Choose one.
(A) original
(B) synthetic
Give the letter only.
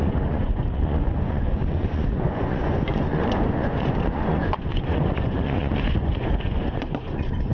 B